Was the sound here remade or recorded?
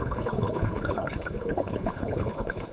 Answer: remade